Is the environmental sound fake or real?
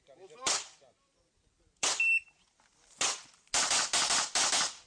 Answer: real